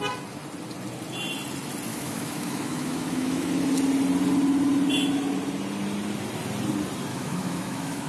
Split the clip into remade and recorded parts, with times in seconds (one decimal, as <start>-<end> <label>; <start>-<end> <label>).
0.0-1.9 recorded; 1.9-3.5 remade; 3.5-7.1 recorded; 7.1-8.1 remade